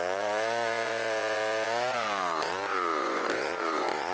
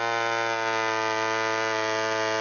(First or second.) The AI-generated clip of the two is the first